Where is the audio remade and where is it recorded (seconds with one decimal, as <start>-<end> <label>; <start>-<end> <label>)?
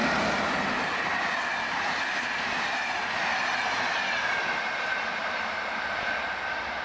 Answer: 0.0-6.8 recorded